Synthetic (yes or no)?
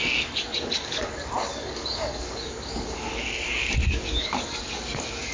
yes